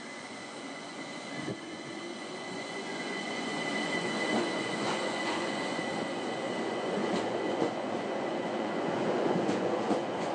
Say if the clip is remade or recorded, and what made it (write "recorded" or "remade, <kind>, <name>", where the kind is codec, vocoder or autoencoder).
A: remade, vocoder, Vocos